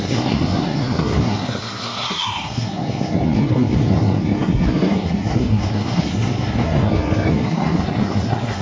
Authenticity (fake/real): fake